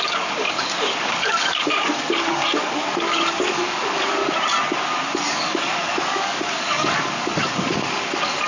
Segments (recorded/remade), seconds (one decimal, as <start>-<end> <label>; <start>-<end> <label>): 0.0-4.2 remade; 4.2-5.3 recorded; 5.3-8.5 remade